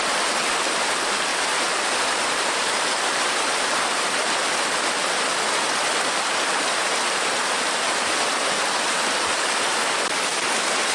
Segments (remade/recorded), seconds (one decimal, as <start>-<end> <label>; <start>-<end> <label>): 0.0-1.3 recorded; 1.3-4.1 remade; 4.1-10.9 recorded